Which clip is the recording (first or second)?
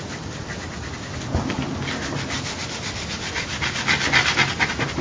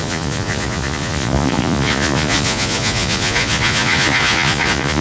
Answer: first